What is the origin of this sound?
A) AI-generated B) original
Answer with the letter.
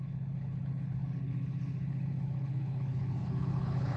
A